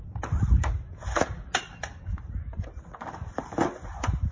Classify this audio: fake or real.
real